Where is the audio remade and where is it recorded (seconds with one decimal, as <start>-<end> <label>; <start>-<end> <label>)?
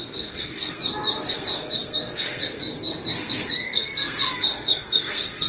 0.0-0.8 remade; 0.8-1.3 recorded; 1.3-5.5 remade